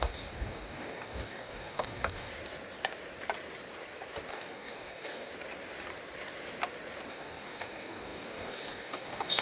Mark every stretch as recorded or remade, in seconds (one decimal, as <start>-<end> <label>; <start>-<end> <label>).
0.0-2.3 remade; 2.3-4.3 recorded; 4.3-5.3 remade; 5.3-7.1 recorded; 7.1-9.4 remade